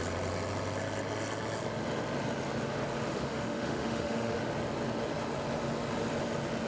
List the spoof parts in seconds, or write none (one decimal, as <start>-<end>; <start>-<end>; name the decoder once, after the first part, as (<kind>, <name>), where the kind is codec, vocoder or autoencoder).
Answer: 3.1-4.4 (autoencoder, DAC-VAE)